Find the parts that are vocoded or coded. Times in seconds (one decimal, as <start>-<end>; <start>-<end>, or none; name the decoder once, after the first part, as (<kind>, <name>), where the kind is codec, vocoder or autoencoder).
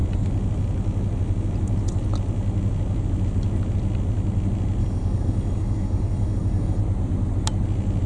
4.8-6.8 (codec, DAC)